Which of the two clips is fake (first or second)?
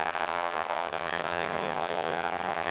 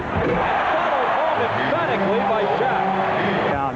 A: first